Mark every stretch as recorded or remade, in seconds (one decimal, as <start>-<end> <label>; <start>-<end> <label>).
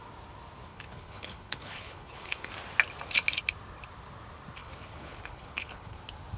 0.0-0.7 recorded; 0.7-2.5 remade; 2.5-4.6 recorded; 4.6-6.0 remade; 6.0-6.4 recorded